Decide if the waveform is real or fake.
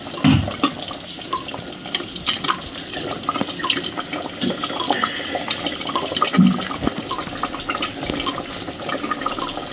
real